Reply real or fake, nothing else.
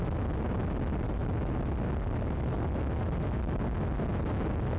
real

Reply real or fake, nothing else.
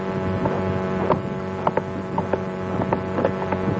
real